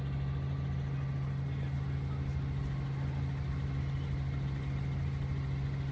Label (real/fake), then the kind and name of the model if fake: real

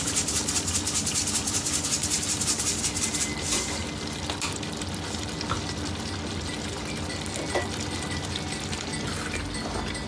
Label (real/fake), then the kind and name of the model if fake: real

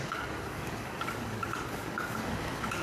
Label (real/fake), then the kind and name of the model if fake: fake, codec, DAC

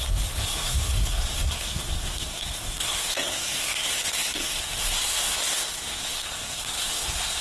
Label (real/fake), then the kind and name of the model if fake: fake, codec, SNAC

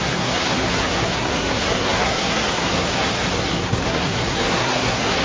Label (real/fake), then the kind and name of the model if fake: fake, codec, SNAC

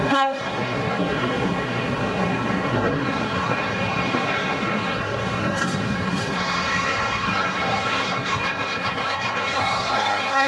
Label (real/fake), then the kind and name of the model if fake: fake, codec, SNAC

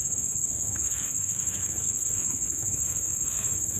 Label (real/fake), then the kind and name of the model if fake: fake, codec, SNAC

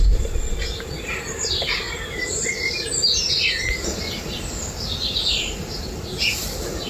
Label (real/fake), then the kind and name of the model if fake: real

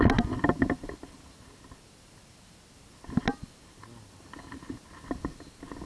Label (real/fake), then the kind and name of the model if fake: real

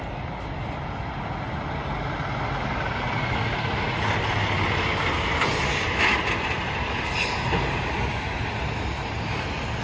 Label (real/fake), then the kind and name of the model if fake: real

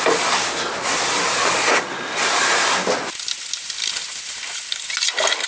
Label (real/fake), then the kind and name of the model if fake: real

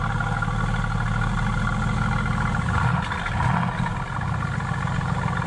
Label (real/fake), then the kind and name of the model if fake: real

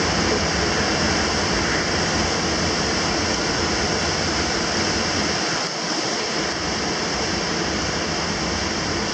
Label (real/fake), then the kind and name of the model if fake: real